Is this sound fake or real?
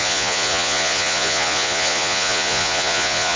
fake